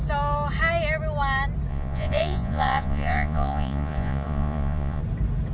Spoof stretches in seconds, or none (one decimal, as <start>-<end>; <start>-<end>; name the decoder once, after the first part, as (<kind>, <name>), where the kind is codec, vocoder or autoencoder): 1.7-5.0 (vocoder, Vocos)